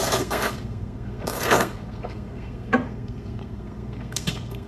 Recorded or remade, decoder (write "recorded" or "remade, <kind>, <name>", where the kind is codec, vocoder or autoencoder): remade, codec, SNAC